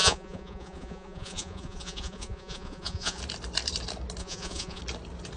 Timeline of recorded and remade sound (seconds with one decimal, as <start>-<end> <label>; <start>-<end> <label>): 0.0-3.2 remade; 3.2-4.2 recorded; 4.2-4.8 remade; 4.8-5.4 recorded